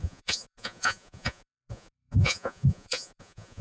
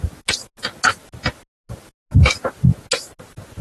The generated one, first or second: first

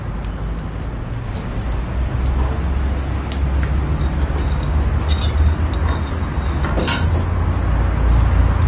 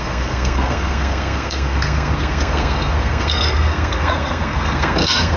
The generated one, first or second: second